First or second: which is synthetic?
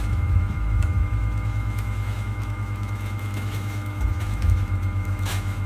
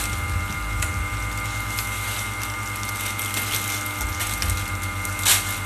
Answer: first